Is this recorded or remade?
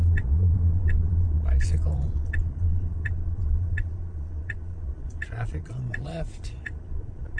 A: remade